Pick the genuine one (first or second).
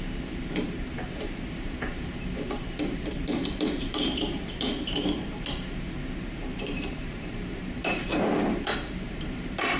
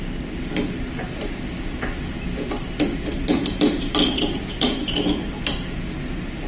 second